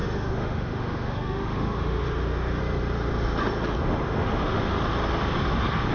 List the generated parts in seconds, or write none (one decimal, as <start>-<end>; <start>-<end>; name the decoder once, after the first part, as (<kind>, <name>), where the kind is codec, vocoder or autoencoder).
0.0-2.6 (autoencoder, DAC-VAE); 3.8-4.7